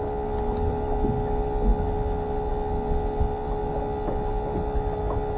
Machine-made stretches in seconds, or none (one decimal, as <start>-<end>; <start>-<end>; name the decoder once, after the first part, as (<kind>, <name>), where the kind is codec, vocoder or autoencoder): none